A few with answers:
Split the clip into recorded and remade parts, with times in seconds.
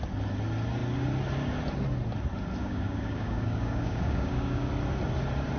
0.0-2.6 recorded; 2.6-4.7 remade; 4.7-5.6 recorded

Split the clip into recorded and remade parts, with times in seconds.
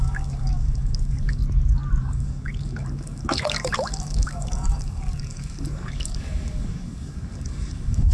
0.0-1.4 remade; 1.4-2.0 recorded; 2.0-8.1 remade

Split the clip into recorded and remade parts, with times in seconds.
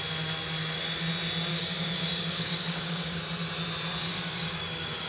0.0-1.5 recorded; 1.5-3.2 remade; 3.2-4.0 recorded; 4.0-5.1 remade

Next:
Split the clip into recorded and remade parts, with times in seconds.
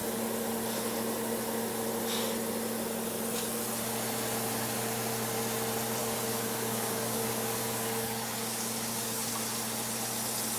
0.0-6.0 recorded; 6.0-9.3 remade; 9.3-10.6 recorded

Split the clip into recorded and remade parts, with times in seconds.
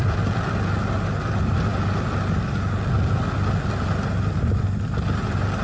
0.0-5.6 recorded